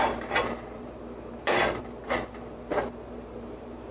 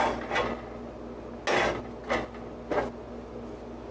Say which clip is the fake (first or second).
first